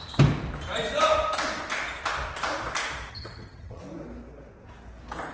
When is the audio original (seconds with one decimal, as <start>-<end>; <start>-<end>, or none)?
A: 0.0-3.1; 3.8-5.3